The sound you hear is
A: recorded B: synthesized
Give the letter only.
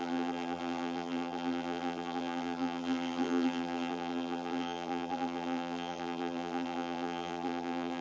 B